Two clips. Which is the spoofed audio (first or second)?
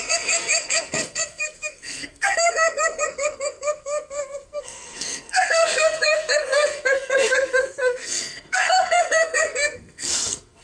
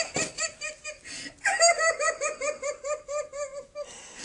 first